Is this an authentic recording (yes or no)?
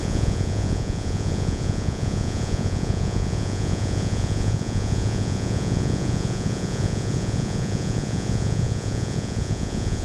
no